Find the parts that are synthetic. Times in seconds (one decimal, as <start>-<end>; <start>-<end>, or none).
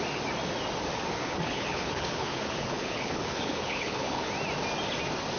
1.1-4.3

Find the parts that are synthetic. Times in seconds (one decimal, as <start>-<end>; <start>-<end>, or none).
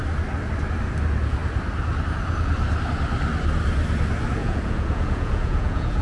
4.4-6.0